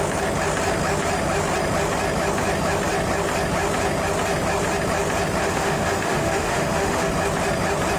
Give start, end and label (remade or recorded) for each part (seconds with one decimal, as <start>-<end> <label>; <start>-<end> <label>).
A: 0.0-5.4 recorded; 5.4-7.1 remade; 7.1-8.0 recorded